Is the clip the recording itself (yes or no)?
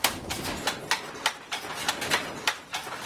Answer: yes